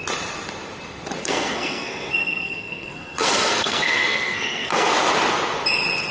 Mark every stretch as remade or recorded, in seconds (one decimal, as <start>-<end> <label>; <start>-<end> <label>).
0.0-1.2 recorded; 1.2-4.9 remade; 4.9-6.1 recorded